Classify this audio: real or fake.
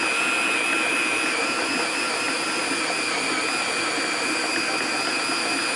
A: real